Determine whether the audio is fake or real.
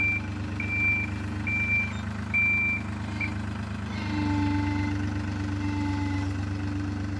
real